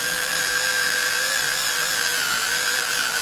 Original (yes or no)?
no